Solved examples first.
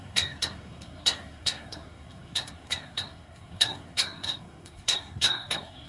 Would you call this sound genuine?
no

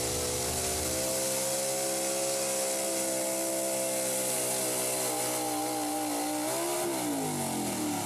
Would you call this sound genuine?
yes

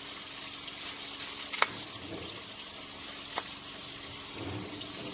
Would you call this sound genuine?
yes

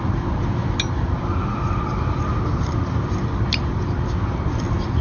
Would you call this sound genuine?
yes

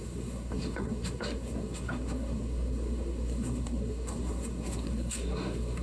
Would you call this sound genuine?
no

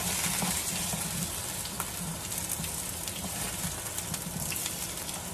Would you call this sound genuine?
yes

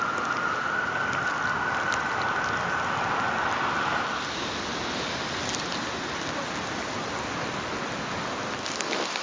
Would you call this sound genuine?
yes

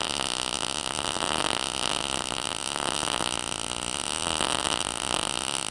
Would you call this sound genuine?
yes